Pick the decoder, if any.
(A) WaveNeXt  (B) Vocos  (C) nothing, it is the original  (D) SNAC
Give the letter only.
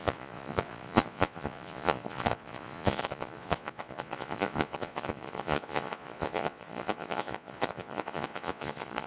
B